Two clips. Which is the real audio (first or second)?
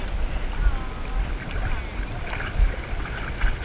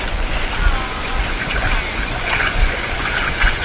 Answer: first